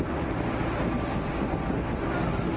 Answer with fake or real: real